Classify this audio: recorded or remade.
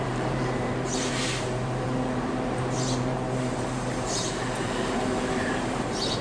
remade